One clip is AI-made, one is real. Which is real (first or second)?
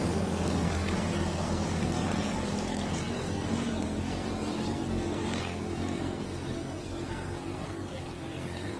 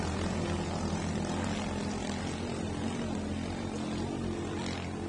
second